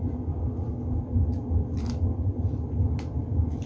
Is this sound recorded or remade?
recorded